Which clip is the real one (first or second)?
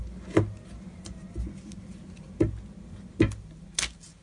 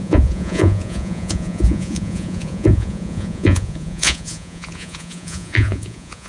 first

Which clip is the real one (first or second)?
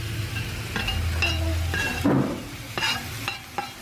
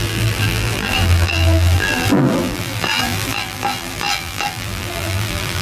first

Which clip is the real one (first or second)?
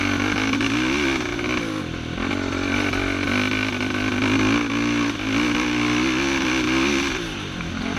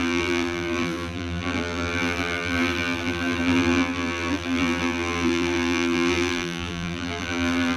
first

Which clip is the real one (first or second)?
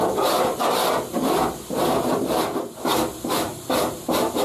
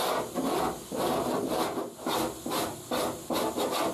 second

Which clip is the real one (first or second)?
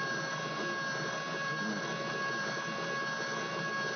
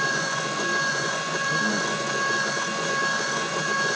first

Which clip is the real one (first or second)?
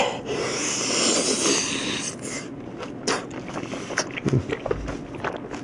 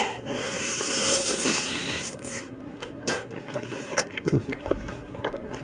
first